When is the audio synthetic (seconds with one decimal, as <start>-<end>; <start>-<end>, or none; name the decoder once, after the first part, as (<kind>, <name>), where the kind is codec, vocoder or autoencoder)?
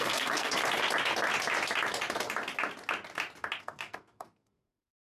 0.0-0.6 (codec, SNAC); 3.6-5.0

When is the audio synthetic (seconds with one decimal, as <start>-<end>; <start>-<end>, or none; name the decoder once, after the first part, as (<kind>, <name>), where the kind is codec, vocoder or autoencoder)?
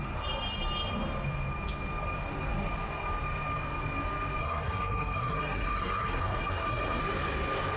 4.4-7.0 (codec, SNAC)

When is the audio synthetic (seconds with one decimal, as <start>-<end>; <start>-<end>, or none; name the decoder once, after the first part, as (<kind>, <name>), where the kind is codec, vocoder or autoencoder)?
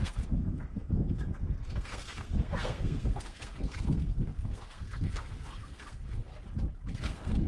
0.0-6.3 (codec, SNAC); 6.9-7.5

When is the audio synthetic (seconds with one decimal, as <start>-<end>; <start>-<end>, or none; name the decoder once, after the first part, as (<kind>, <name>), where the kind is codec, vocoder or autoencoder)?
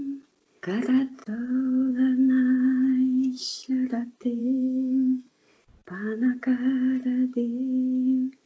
4.4-5.6 (codec, SNAC)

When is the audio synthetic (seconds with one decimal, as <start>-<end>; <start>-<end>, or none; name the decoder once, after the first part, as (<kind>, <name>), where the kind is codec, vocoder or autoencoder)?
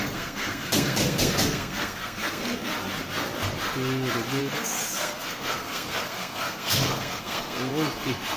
0.0-2.7 (codec, SNAC); 4.4-7.7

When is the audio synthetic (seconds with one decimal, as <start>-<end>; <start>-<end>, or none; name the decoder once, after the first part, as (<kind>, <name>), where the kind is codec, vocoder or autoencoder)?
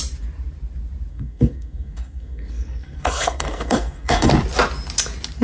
1.1-4.3 (codec, SNAC)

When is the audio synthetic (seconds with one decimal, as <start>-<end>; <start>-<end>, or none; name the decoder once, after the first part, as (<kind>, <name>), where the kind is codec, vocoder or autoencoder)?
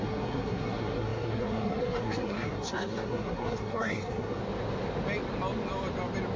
0.0-4.4 (codec, SNAC)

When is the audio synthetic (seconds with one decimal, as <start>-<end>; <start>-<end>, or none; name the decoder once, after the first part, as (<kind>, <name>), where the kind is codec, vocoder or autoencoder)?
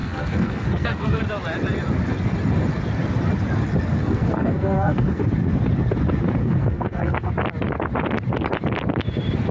0.0-1.2 (codec, SNAC); 4.0-5.3; 6.4-7.3